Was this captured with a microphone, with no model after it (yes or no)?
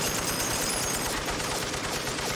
yes